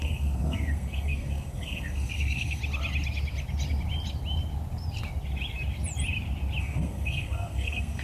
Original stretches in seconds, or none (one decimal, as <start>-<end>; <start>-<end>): 2.6-6.6